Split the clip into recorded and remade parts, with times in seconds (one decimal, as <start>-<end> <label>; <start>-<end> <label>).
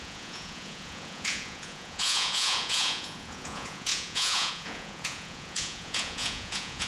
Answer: 0.0-6.9 remade